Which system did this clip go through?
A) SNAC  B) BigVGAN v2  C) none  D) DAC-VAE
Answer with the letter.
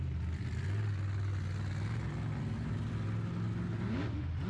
C